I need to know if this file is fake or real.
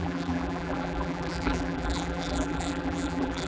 fake